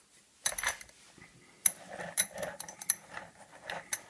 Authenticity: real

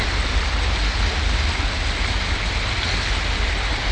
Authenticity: real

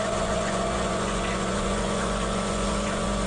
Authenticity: fake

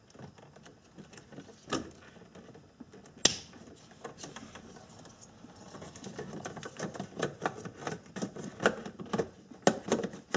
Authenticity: real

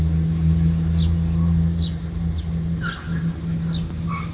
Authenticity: real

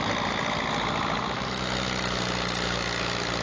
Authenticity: real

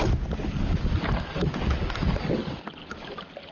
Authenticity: real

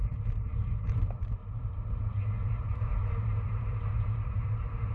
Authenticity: fake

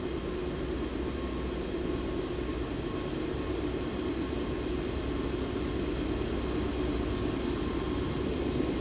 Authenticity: real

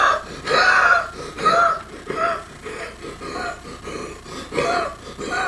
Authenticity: real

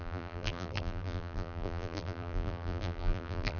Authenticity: fake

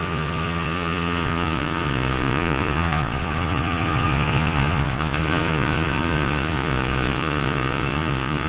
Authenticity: fake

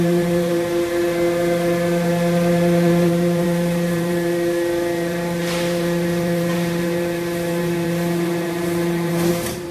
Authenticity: fake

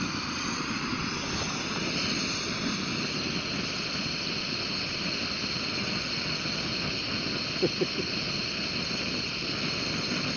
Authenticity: real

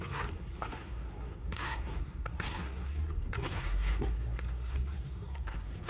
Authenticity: fake